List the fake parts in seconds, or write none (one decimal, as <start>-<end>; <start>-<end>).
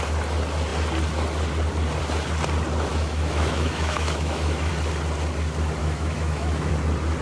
2.9-4.7; 5.8-6.7